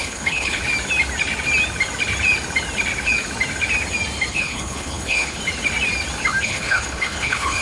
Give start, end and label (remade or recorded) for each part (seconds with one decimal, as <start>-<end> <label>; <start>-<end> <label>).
0.0-0.6 remade; 0.6-4.3 recorded; 4.3-5.4 remade; 5.4-6.4 recorded; 6.4-7.6 remade